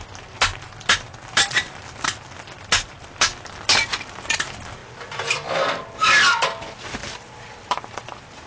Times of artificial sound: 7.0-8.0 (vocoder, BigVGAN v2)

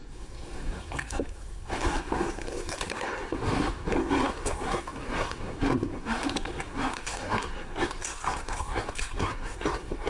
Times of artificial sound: 0.0-10.1 (codec, SNAC)

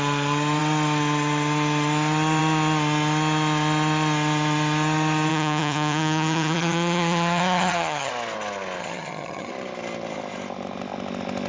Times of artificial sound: 5.3-8.1 (vocoder, HiFi-GAN); 8.8-9.5

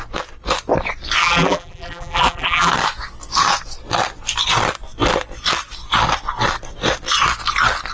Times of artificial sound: 1.2-2.7 (vocoder, BigVGAN v2)